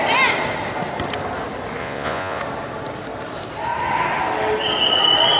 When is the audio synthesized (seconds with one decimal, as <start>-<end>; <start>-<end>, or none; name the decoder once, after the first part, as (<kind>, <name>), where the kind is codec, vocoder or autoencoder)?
1.8-2.4 (vocoder, Vocos)